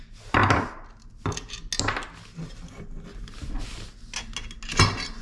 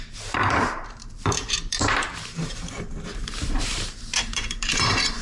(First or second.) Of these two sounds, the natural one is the first